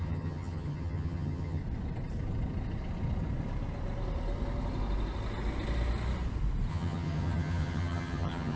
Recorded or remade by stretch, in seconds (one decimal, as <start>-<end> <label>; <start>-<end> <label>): 0.0-1.6 remade; 1.6-6.7 recorded; 6.7-8.6 remade